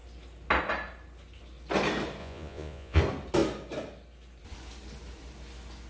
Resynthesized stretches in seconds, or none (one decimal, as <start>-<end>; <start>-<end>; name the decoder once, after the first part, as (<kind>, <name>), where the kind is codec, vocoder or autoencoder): 2.2-3.0 (vocoder, Vocos)